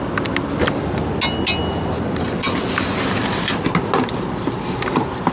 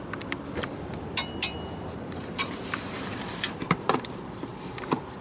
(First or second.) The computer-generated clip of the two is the second